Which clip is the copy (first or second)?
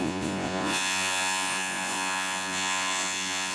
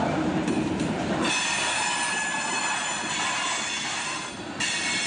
first